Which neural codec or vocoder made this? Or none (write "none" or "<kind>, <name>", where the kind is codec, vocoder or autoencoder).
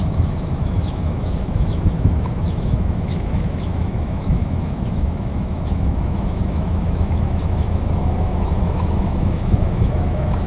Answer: autoencoder, DAC-VAE